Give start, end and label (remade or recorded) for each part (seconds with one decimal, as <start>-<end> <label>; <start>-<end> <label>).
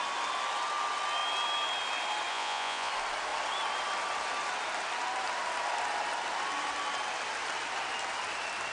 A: 0.0-2.3 recorded; 2.3-2.9 remade; 2.9-8.7 recorded